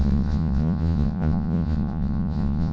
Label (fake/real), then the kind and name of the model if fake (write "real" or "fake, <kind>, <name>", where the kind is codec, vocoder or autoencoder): fake, vocoder, Vocos